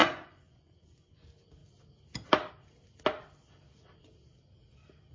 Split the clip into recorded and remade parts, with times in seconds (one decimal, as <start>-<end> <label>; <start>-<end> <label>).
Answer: 0.0-1.2 remade; 1.2-5.1 recorded